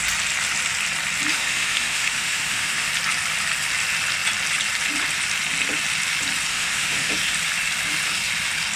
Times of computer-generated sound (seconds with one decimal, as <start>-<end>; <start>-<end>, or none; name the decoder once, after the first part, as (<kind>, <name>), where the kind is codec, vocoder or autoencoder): 1.3-2.9 (autoencoder, DAC-VAE); 6.5-7.1